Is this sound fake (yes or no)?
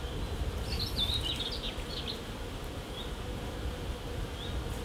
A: no